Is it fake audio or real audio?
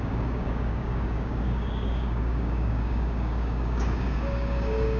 fake